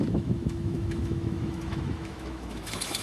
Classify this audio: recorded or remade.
remade